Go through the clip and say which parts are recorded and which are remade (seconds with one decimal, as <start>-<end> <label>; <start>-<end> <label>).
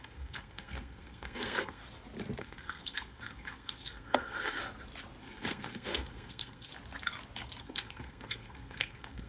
0.0-1.8 remade; 1.8-2.4 recorded; 2.4-4.6 remade; 4.6-5.2 recorded; 5.2-6.7 remade; 6.7-7.6 recorded; 7.6-9.3 remade